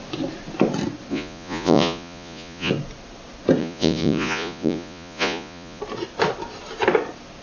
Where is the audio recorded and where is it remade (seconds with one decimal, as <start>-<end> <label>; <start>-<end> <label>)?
0.0-1.1 recorded; 1.1-2.7 remade; 2.7-3.6 recorded; 3.6-5.8 remade; 5.8-7.4 recorded